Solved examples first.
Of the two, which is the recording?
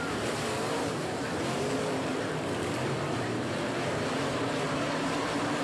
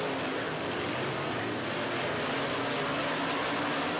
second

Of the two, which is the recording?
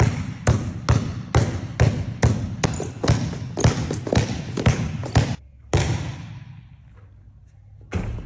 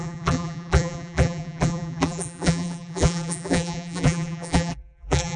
first